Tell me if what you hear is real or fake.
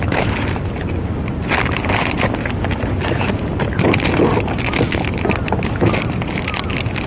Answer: real